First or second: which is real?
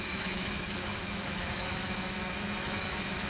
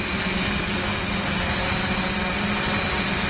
second